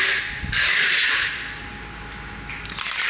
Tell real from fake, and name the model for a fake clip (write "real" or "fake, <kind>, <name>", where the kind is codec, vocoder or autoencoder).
fake, vocoder, BigVGAN v2